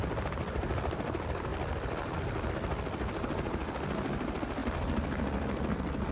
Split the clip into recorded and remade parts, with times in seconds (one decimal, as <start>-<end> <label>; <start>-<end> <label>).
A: 0.0-6.1 recorded